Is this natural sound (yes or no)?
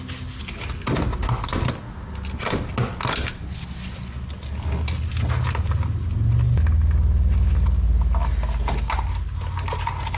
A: yes